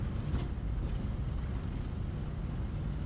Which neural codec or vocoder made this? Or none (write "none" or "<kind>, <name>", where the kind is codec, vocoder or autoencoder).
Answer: none